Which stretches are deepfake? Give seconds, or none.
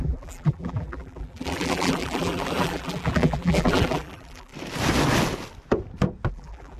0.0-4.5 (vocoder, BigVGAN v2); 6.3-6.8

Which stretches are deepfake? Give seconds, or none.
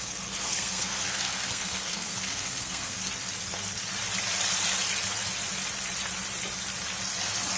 0.0-3.0 (codec, SNAC)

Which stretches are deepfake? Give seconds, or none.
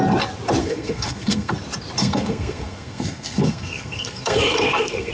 0.6-1.5 (codec, SNAC); 2.0-5.1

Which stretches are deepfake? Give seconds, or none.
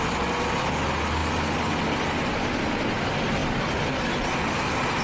none